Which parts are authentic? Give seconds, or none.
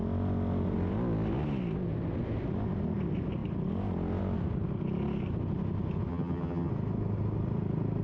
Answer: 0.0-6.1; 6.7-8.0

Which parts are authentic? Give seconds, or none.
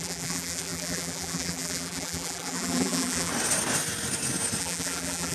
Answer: 3.3-4.6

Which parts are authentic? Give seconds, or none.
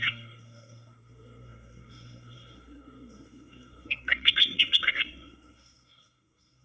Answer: none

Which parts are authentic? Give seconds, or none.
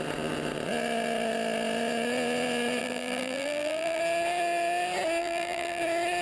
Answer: 0.0-2.8; 4.0-5.2; 5.8-6.2